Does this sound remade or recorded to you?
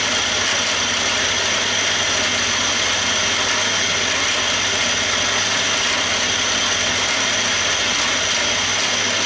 recorded